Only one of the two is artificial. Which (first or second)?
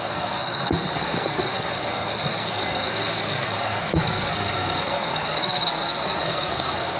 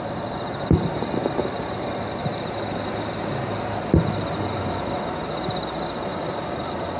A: first